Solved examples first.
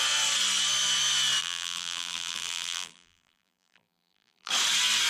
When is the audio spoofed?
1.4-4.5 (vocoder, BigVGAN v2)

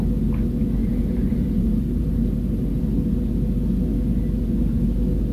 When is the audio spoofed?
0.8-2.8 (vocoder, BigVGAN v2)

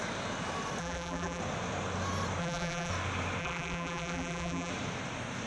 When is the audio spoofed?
0.8-1.4 (vocoder, BigVGAN v2); 2.4-2.9; 3.4-4.7

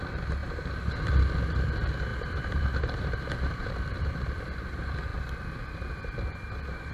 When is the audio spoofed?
0.4-1.0 (vocoder, BigVGAN v2); 2.1-4.4

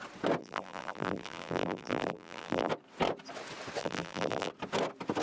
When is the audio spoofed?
0.4-2.7 (vocoder, BigVGAN v2); 3.8-4.5

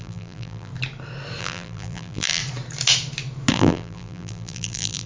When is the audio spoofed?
0.0-0.7 (vocoder, BigVGAN v2); 1.4-2.4; 3.5-5.1

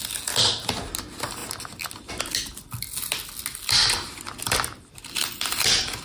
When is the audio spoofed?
3.8-5.3 (vocoder, BigVGAN v2)

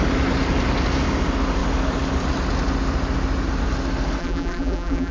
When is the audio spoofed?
4.2-5.1 (vocoder, BigVGAN v2)